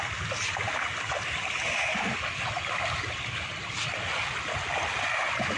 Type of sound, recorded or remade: recorded